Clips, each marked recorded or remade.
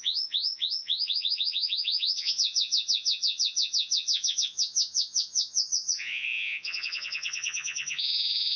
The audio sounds remade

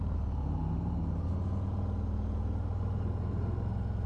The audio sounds recorded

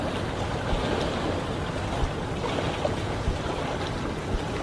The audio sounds recorded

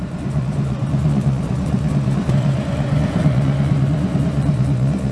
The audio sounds remade